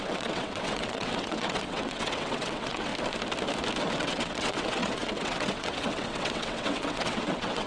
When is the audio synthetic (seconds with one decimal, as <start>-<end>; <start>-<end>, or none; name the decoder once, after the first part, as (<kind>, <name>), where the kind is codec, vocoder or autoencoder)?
0.0-2.9 (vocoder, WaveNeXt); 3.8-7.7